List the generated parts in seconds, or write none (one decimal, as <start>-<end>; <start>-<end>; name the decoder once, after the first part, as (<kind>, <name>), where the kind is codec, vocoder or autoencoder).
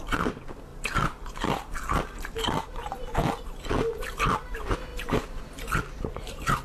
0.0-0.7 (vocoder, BigVGAN v2); 3.4-4.9; 5.8-6.6